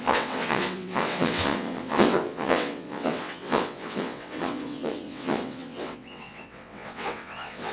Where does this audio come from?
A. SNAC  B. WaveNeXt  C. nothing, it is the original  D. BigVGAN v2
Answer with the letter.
B